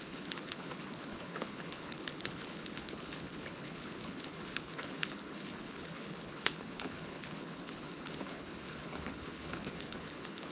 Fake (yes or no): yes